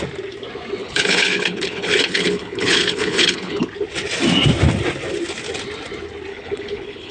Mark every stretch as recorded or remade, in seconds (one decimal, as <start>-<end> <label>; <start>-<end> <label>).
0.0-0.8 recorded; 0.8-3.7 remade; 3.7-6.3 recorded; 6.3-7.1 remade